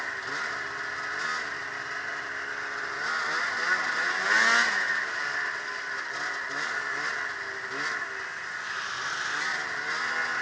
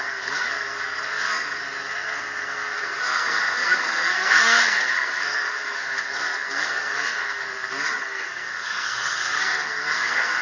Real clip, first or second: first